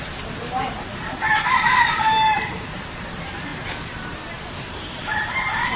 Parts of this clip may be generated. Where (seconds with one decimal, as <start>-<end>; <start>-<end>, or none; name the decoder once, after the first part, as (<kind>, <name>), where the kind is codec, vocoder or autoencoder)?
0.0-3.5 (vocoder, BigVGAN v2); 4.5-5.8